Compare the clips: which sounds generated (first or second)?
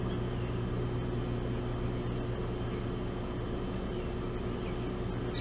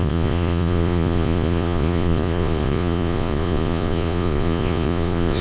second